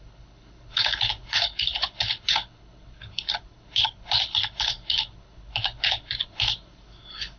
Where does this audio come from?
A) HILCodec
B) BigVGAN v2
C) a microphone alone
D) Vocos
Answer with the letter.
A